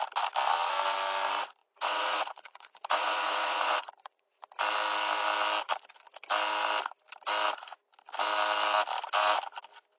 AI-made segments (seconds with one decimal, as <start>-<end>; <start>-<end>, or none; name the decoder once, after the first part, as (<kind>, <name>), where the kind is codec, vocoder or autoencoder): 1.6-4.5 (vocoder, Vocos)